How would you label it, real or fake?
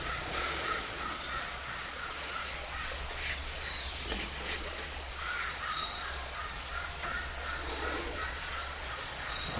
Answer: fake